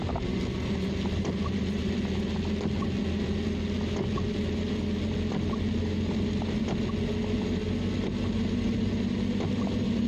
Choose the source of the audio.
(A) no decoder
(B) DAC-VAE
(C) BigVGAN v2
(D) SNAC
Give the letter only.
A